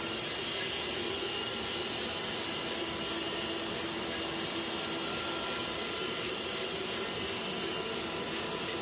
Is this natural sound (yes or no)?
yes